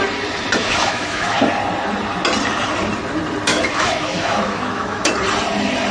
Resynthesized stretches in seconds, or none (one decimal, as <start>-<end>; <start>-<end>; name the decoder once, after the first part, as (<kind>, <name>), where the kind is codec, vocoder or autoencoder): 0.6-1.4 (autoencoder, DAC-VAE); 3.5-5.1